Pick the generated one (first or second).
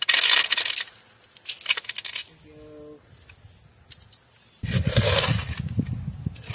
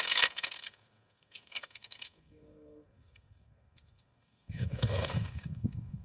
second